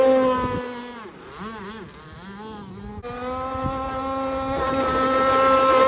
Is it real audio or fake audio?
real